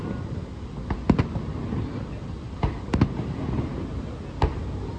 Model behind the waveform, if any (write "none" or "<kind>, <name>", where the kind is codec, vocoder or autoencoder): none